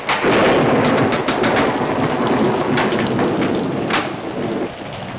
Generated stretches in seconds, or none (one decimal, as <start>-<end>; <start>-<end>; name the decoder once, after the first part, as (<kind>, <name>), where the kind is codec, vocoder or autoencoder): none